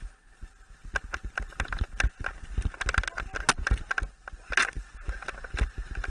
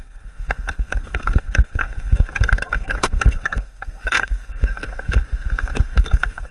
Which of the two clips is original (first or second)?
first